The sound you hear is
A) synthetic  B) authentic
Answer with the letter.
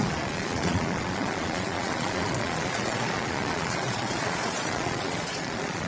A